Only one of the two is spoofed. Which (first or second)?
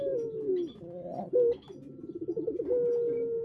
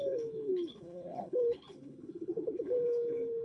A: second